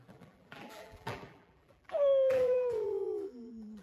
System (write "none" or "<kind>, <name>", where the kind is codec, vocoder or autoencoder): vocoder, BigVGAN v2